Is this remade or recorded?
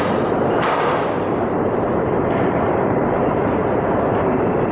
remade